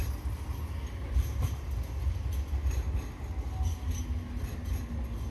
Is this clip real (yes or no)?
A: yes